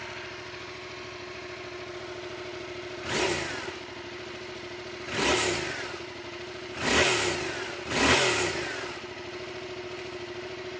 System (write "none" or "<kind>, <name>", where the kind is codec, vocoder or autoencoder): none